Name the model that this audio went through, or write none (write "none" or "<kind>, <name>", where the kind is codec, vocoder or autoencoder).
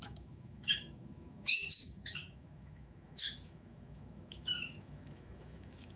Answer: autoencoder, DAC-VAE